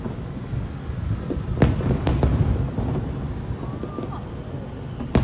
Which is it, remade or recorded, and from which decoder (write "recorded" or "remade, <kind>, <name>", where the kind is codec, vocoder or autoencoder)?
recorded